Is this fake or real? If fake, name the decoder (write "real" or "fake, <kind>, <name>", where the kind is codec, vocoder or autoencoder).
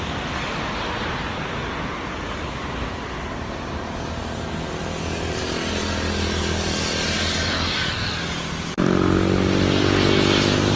real